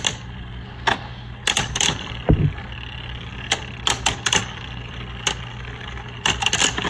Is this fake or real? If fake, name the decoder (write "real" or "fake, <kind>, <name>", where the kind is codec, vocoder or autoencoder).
real